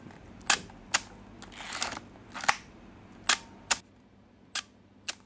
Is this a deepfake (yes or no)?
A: no